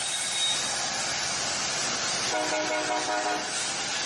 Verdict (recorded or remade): recorded